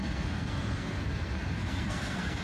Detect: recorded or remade remade